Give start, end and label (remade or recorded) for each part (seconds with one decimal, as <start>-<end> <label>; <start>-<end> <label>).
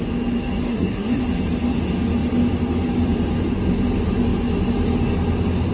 0.0-0.7 recorded; 0.7-1.2 remade; 1.2-5.7 recorded